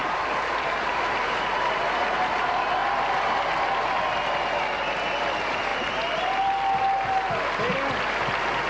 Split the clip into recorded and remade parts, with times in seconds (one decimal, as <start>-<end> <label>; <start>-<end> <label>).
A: 0.0-1.8 remade; 1.8-8.7 recorded